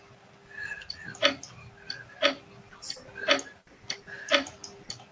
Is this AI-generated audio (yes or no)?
no